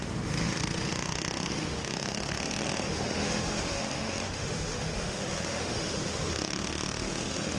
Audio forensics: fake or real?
fake